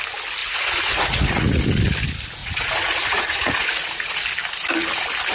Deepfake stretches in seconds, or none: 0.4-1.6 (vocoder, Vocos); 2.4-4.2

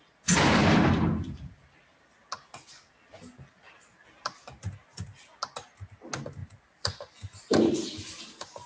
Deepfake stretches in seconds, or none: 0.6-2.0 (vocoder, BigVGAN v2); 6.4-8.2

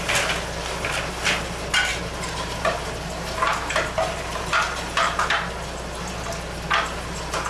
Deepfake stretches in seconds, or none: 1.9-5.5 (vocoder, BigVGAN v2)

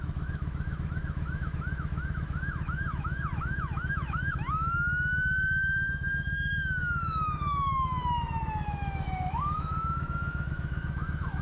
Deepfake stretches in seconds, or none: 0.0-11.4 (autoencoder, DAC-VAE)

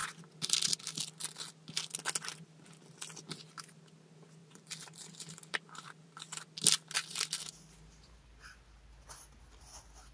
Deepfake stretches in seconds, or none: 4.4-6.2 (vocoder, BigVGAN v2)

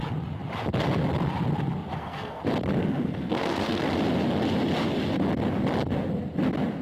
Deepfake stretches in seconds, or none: 1.9-2.4 (codec, SNAC); 2.8-3.8

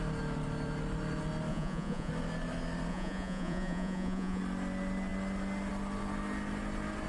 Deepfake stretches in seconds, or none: 1.5-2.1 (vocoder, Vocos); 2.9-4.4

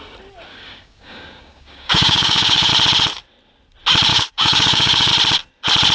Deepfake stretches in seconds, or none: 0.5-2.7 (codec, DAC); 4.1-5.1